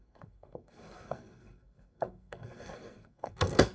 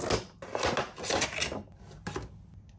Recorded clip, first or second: second